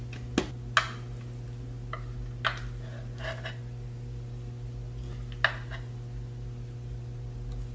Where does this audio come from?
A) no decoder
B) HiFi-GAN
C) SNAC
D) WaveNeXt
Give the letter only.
A